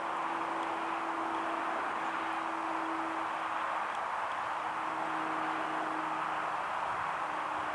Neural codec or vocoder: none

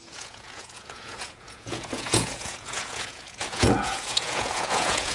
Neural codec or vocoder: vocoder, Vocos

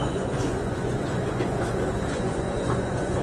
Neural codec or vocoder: vocoder, Vocos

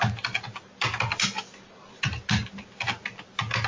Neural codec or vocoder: none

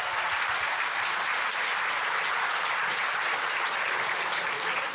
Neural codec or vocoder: none